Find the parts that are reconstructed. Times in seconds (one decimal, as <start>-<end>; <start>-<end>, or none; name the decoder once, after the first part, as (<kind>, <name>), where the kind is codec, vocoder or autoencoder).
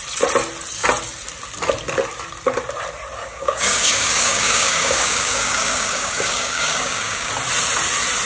3.2-7.3 (codec, DAC)